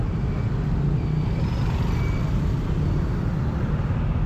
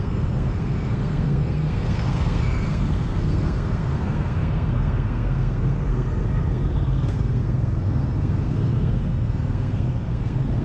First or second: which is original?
first